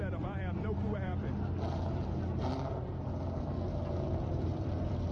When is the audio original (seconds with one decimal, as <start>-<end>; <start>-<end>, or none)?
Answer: 1.1-4.2